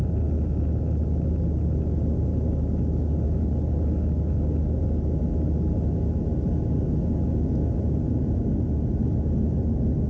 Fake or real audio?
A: real